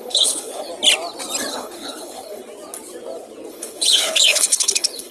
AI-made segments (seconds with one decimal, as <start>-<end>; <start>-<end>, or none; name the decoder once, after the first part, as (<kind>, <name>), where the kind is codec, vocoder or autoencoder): 0.0-0.7 (codec, HILCodec); 1.5-2.4; 3.5-5.1